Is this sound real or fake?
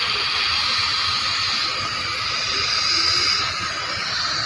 real